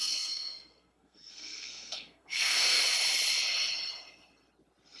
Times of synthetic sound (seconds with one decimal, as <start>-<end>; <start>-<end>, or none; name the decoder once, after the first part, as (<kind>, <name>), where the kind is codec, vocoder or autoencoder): 0.0-2.8 (codec, SNAC)